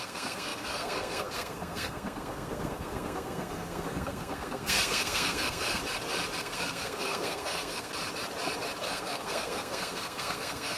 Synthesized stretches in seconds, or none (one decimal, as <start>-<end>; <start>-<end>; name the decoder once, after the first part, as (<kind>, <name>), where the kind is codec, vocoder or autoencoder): 0.0-5.8 (codec, SNAC); 6.4-7.9; 8.8-10.8